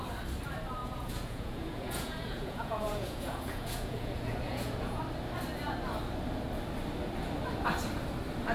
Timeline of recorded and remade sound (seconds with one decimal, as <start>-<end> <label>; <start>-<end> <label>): 0.0-0.8 recorded; 0.8-5.0 remade; 5.0-8.5 recorded